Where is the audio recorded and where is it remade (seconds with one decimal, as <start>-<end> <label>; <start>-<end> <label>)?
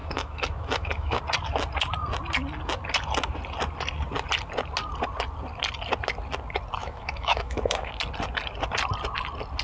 0.0-1.2 remade; 1.2-6.8 recorded; 6.8-7.9 remade; 7.9-9.6 recorded